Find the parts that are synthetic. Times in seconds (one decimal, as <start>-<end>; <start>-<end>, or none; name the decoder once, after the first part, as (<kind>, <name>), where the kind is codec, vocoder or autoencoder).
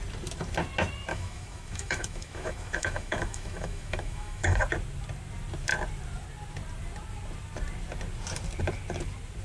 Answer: 1.1-4.6 (autoencoder, DAC-VAE)